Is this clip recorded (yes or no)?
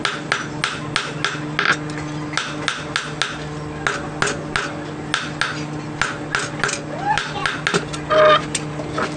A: yes